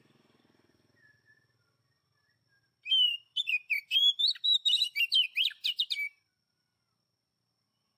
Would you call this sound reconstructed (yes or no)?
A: yes